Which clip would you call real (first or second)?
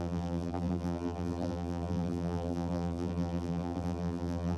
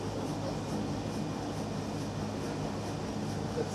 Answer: second